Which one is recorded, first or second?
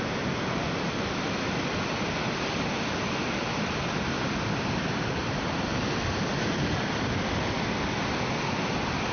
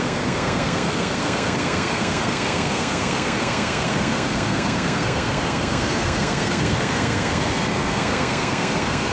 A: first